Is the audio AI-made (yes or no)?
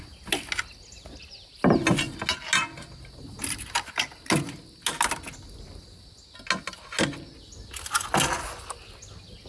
no